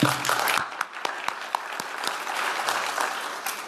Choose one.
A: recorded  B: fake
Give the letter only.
A